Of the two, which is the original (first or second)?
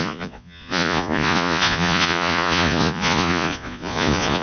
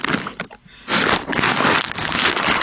second